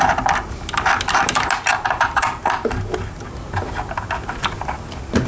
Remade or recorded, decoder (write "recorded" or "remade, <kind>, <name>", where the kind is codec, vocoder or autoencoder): recorded